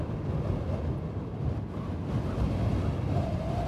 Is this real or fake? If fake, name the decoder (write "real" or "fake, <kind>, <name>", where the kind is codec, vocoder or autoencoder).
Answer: real